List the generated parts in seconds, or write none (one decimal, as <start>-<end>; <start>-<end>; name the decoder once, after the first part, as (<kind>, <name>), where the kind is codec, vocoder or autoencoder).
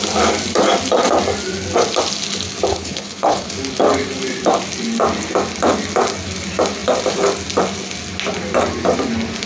2.7-3.5 (codec, HILCodec)